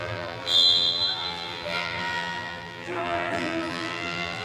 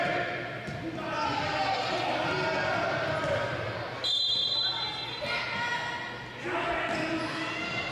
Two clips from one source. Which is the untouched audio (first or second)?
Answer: second